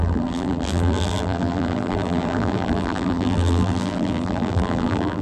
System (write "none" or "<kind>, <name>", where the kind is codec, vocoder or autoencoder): vocoder, BigVGAN v2